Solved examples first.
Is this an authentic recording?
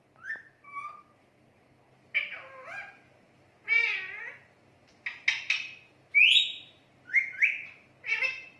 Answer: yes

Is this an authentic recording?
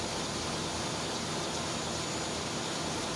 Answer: yes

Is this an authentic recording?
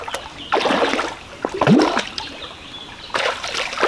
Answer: yes